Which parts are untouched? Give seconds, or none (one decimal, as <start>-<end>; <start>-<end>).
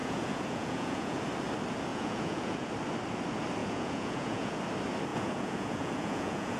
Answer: 1.2-1.9; 2.7-3.6; 4.6-5.1